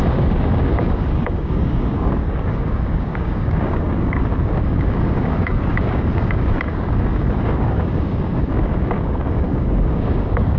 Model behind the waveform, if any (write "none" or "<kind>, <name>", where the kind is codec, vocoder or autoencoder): codec, DAC